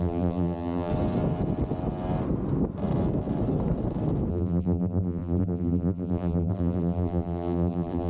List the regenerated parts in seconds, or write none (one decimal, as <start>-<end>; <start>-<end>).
0.0-0.9; 4.3-8.1